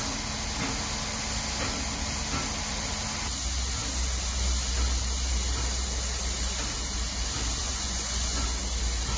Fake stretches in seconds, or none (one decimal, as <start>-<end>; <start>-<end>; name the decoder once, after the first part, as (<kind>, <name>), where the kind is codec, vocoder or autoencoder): 7.6-8.4 (vocoder, Vocos)